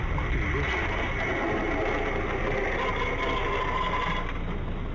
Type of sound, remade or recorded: recorded